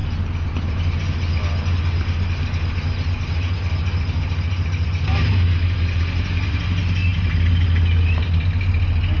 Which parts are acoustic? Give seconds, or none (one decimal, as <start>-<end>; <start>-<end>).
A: 0.0-9.2